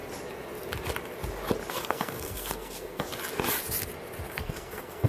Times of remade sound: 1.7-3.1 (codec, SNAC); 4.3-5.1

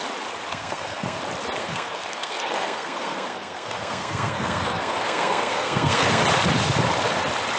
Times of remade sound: 0.5-1.2 (codec, SNAC); 1.6-6.2